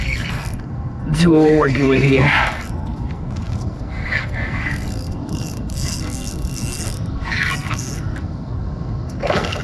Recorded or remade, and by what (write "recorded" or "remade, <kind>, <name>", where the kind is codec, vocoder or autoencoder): remade, codec, SNAC